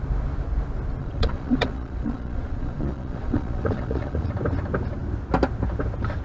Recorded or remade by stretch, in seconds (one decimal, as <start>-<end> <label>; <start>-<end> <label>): 0.0-1.0 recorded; 1.0-4.3 remade; 4.3-6.2 recorded